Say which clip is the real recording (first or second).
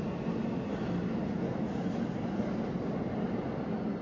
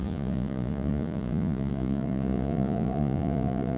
first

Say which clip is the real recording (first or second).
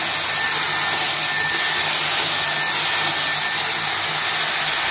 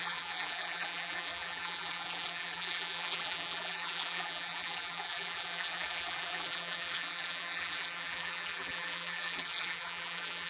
first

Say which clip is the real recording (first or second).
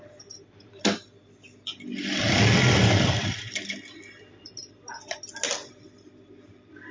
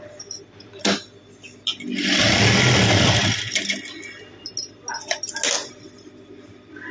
second